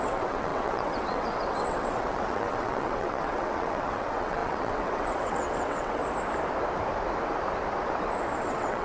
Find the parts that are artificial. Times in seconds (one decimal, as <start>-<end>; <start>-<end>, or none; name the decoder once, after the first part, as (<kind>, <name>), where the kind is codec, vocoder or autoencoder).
0.0-6.0 (vocoder, WaveNeXt); 8.4-8.8